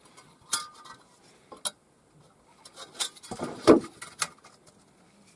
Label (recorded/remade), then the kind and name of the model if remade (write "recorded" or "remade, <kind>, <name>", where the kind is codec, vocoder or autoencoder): recorded